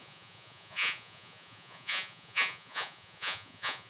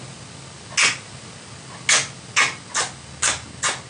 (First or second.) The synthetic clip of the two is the first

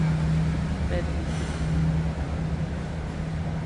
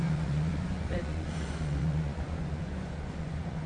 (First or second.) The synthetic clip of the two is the second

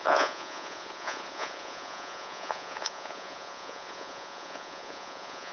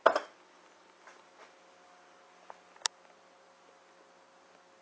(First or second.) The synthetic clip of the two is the first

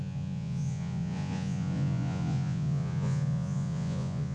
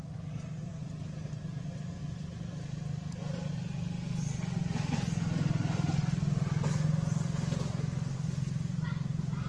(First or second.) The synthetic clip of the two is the first